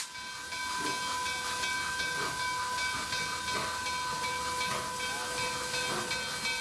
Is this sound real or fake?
real